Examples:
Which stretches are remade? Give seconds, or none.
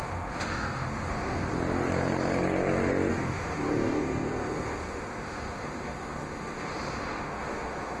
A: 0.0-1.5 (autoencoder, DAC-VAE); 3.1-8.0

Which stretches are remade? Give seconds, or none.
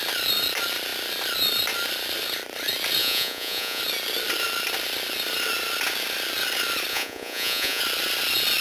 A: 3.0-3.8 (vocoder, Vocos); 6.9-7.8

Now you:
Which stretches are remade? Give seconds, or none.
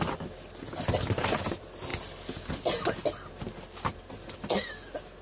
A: none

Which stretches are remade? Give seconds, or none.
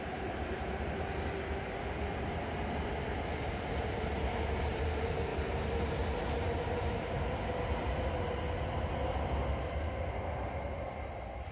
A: none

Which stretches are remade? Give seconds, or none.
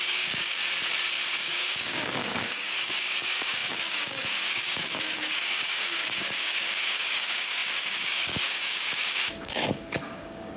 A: 0.0-0.6 (codec, DAC); 1.4-10.6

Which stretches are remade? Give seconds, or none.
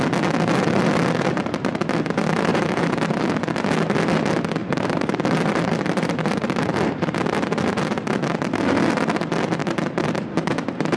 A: 2.5-3.2 (vocoder, BigVGAN v2); 4.6-6.7; 9.6-11.0